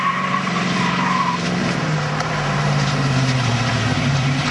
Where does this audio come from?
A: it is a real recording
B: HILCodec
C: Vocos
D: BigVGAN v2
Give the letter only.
D